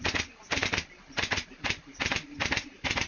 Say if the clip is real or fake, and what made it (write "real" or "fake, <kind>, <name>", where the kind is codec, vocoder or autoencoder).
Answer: real